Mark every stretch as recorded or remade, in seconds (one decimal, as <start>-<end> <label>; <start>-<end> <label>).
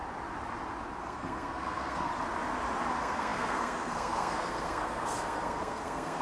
0.0-1.0 recorded; 1.0-2.1 remade; 2.1-2.9 recorded; 2.9-6.2 remade